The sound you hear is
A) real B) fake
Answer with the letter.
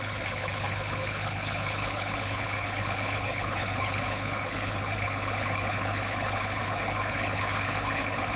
B